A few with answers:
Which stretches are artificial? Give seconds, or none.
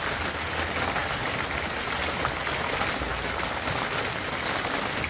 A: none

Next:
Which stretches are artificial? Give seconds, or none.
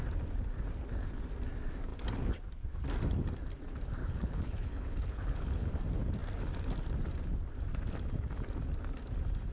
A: 4.0-5.7 (codec, HILCodec)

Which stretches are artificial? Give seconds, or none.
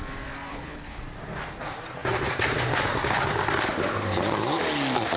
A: 0.5-1.0 (codec, HILCodec)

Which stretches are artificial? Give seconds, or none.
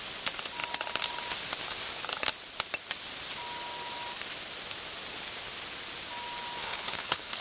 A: 6.6-7.4 (codec, HILCodec)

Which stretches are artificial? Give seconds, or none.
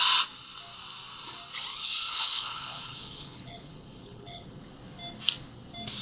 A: 1.7-4.6 (codec, HILCodec)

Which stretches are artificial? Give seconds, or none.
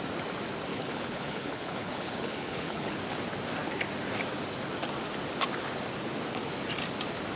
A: 0.7-3.0 (codec, HILCodec)